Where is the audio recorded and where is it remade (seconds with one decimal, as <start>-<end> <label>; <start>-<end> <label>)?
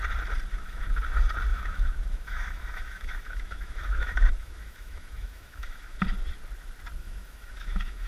0.0-0.5 recorded; 0.5-1.0 remade; 1.0-1.5 recorded; 1.5-6.0 remade; 6.0-7.0 recorded; 7.0-8.1 remade